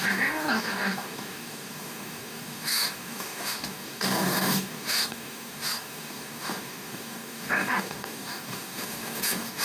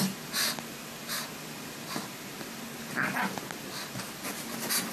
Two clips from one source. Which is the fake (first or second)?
first